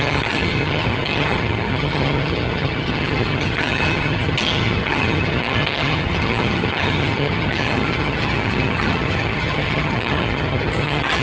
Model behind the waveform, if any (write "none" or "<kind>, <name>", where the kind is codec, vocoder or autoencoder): vocoder, HiFi-GAN